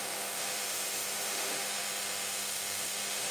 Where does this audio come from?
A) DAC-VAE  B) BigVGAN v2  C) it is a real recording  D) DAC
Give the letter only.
A